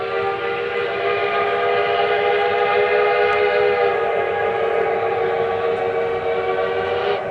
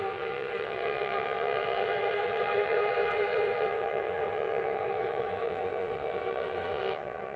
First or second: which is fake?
second